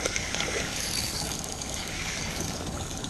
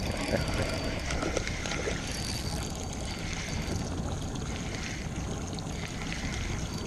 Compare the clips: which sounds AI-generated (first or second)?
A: first